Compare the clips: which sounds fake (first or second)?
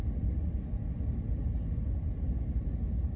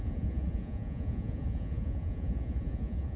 second